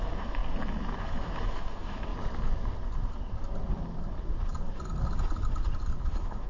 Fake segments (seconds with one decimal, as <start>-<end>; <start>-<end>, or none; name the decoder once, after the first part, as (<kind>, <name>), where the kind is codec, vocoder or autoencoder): 0.0-0.4 (autoencoder, DAC-VAE); 1.0-2.1; 6.0-6.5